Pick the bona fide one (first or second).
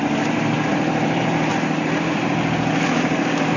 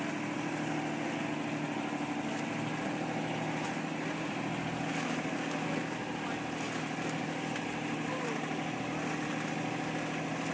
second